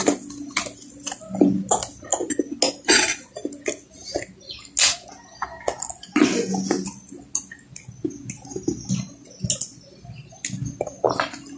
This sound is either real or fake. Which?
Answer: real